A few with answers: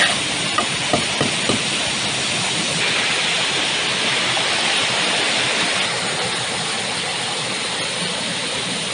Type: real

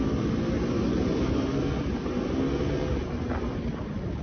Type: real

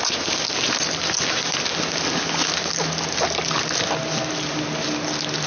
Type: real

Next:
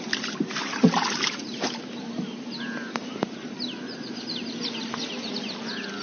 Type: real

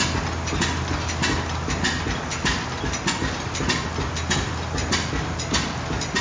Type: real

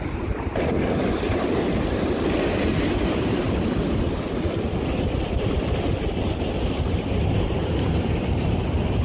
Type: real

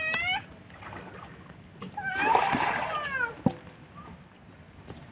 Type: real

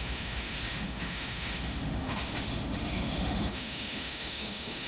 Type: fake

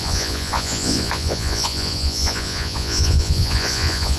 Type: fake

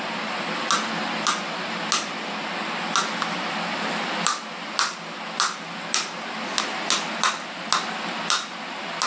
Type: real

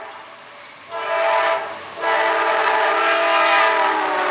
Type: real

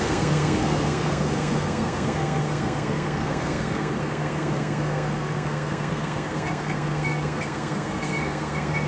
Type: fake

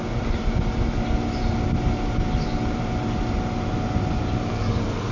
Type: real